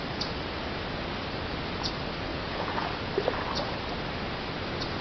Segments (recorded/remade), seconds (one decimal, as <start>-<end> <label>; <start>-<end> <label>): 0.0-2.3 recorded; 2.3-2.9 remade; 2.9-5.0 recorded